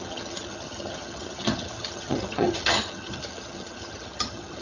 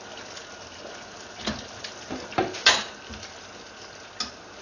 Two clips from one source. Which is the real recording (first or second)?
second